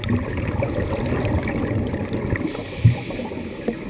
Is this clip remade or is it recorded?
recorded